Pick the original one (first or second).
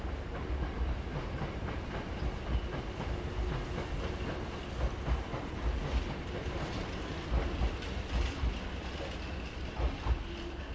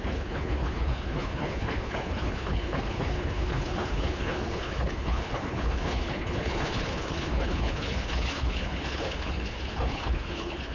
first